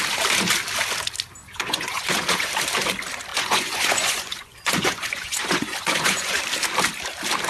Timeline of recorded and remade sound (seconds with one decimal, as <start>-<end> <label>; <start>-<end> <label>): 0.0-1.4 recorded; 1.4-2.5 remade; 2.5-3.3 recorded; 3.3-6.4 remade; 6.4-7.5 recorded